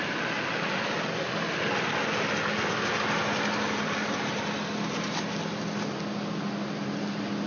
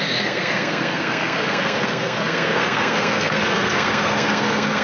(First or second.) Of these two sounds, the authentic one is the first